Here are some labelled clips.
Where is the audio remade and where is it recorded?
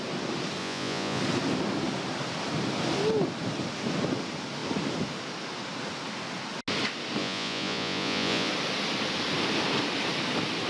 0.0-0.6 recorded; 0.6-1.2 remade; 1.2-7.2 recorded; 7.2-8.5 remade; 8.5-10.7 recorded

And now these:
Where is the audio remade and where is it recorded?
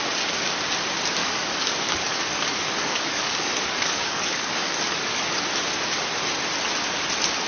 0.0-1.2 recorded; 1.2-5.4 remade; 5.4-7.5 recorded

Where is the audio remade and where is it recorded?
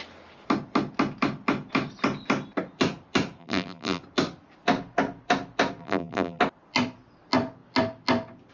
0.0-3.4 recorded; 3.4-4.0 remade; 4.0-5.8 recorded; 5.8-6.4 remade; 6.4-8.5 recorded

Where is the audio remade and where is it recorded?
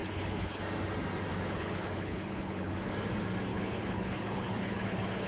0.0-0.6 remade; 0.6-1.3 recorded; 1.3-2.9 remade; 2.9-3.5 recorded; 3.5-5.3 remade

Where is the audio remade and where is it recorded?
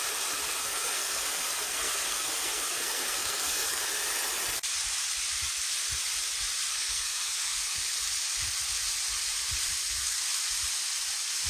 0.0-0.6 recorded; 0.6-3.8 remade; 3.8-6.7 recorded; 6.7-7.8 remade; 7.8-11.5 recorded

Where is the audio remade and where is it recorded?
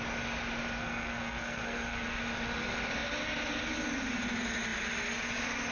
0.0-0.8 recorded; 0.8-2.2 remade; 2.2-5.7 recorded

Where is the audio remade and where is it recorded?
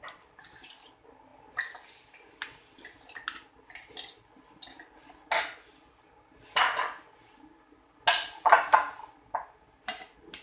0.0-10.4 recorded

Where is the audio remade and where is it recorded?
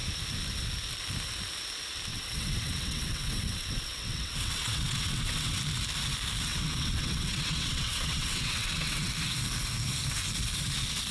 0.0-2.1 recorded; 2.1-5.6 remade; 5.6-6.5 recorded; 6.5-9.1 remade; 9.1-11.1 recorded